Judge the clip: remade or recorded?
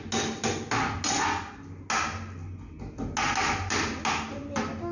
recorded